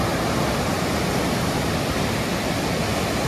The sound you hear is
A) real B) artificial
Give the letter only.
A